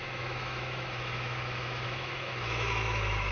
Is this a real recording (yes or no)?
no